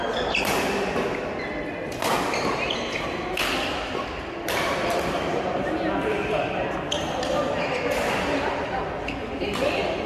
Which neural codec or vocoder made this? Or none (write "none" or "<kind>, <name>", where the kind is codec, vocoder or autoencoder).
none